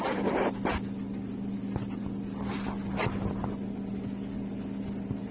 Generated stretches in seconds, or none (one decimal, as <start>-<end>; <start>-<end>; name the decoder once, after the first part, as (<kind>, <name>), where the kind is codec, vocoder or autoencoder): none